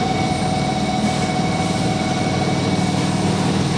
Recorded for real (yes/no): yes